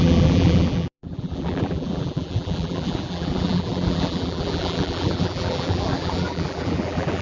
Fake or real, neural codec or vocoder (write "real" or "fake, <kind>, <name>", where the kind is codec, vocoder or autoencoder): fake, vocoder, BigVGAN v2